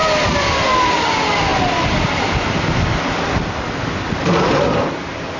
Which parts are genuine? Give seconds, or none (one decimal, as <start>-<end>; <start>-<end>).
0.0-1.5; 4.7-5.4